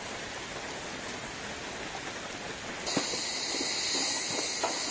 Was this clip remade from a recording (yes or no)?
no